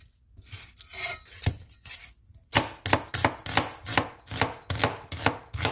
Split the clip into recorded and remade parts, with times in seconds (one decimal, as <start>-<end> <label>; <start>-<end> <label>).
0.0-5.7 recorded